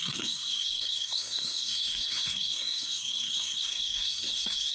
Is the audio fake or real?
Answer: fake